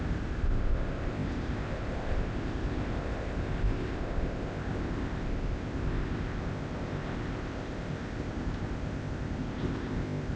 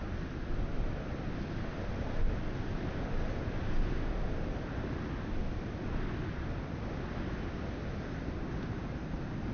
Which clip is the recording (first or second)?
second